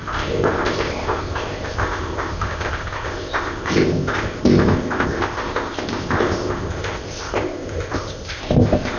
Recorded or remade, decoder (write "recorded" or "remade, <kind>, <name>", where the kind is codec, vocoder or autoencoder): remade, codec, ZipCodec